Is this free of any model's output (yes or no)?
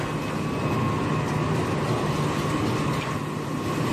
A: yes